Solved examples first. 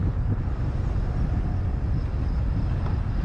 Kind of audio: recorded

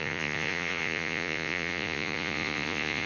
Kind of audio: remade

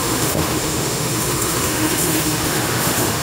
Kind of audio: remade